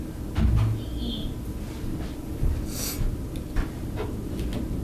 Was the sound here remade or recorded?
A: recorded